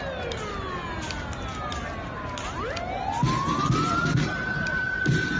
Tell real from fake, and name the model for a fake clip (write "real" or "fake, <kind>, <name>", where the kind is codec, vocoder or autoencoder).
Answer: real